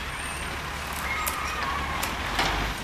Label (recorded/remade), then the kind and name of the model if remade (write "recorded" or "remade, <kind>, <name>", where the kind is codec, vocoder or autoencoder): recorded